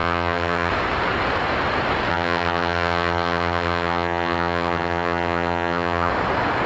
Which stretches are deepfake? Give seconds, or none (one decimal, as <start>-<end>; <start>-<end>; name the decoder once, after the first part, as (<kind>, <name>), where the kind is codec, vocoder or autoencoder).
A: 0.0-0.7 (vocoder, HiFi-GAN); 2.1-6.1